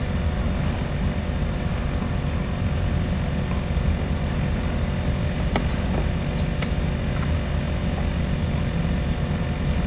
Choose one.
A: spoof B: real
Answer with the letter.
B